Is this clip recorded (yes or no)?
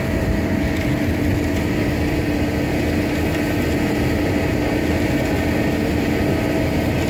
yes